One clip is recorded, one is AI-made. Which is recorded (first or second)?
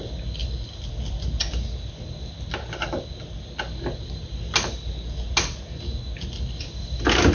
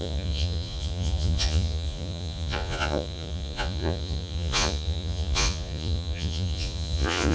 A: first